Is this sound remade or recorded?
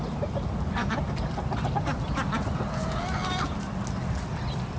recorded